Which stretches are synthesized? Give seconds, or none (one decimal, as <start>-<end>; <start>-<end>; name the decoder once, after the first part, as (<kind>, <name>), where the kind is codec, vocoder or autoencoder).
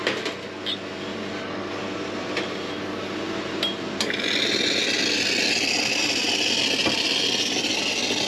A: none